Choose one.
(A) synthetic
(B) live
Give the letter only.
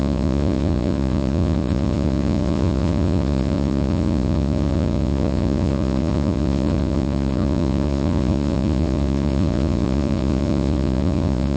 A